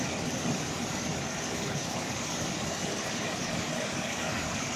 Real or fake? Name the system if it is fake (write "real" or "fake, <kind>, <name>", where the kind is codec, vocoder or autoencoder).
fake, codec, DAC